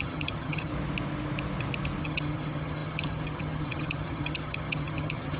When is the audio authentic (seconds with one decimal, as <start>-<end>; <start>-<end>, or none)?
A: 0.7-2.0